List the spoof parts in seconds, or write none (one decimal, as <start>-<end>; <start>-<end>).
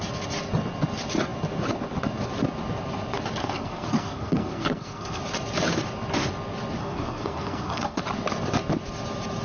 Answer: 3.4-5.2; 6.8-8.0